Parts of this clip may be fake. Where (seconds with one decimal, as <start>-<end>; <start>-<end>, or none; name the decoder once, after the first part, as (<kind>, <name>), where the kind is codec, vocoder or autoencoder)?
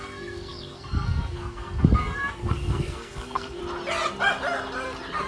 0.0-3.6 (codec, SNAC)